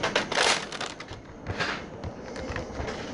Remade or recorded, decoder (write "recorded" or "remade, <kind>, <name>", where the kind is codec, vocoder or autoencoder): recorded